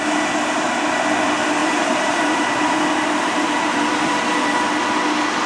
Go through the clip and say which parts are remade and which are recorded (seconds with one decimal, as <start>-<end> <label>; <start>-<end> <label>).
0.0-1.6 recorded; 1.6-4.3 remade; 4.3-5.5 recorded